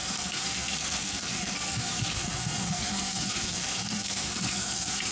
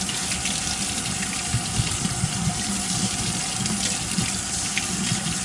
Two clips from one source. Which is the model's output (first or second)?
first